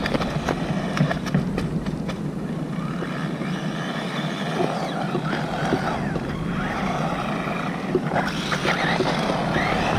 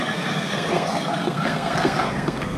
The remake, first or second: second